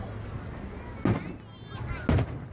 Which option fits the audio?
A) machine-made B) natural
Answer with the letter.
B